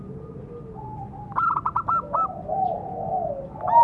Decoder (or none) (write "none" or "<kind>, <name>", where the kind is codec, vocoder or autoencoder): none